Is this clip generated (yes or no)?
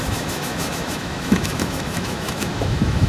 yes